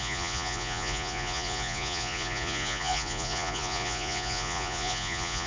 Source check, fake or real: fake